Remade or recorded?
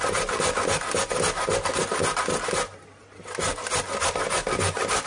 recorded